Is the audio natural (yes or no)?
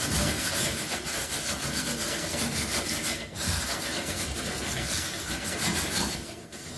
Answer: no